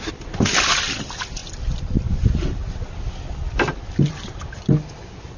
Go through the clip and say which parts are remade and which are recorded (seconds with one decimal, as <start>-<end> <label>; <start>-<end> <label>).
0.0-1.4 recorded; 1.4-2.8 remade; 2.8-3.4 recorded; 3.4-4.5 remade; 4.5-5.4 recorded